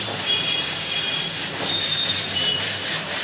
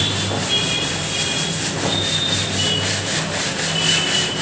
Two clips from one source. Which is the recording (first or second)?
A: second